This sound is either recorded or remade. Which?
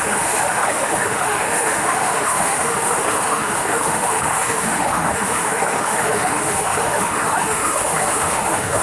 remade